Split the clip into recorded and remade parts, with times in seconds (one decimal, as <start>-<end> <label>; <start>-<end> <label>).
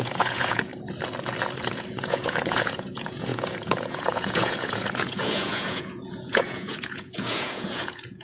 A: 0.0-0.7 remade; 0.7-1.7 recorded; 1.7-8.2 remade